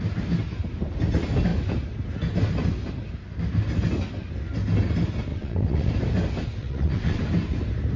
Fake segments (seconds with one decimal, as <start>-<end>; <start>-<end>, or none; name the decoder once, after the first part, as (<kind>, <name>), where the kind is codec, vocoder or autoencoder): 5.3-5.9 (vocoder, WaveNeXt); 6.6-7.2